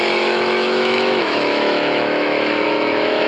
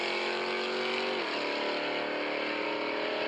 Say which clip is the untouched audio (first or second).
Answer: second